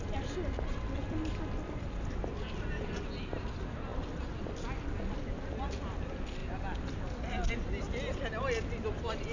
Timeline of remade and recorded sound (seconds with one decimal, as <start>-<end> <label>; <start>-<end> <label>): 0.0-9.3 recorded